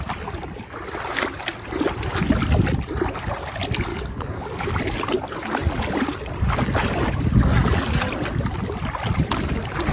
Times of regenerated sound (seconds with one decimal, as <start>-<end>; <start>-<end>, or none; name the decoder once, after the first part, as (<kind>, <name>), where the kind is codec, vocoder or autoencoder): 3.9-4.7 (codec, DAC)